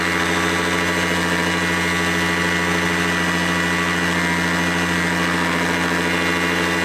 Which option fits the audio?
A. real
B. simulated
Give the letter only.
A